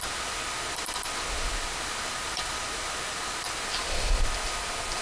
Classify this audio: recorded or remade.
recorded